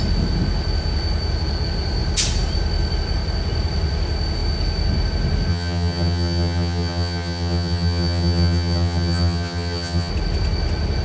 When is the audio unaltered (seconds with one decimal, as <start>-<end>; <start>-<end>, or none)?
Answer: 0.0-5.5; 10.1-11.0